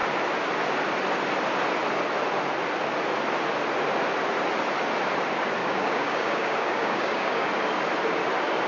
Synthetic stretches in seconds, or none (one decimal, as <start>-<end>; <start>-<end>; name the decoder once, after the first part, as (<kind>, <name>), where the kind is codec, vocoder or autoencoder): 5.6-7.5 (codec, DAC)